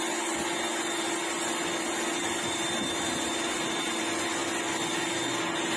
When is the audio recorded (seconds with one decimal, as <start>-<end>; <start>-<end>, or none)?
0.0-5.8